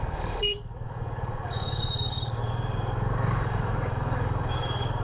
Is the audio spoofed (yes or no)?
yes